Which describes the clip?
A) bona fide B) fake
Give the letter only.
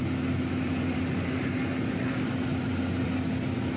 A